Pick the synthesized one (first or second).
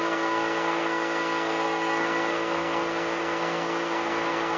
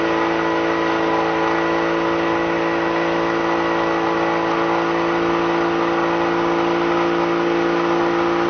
first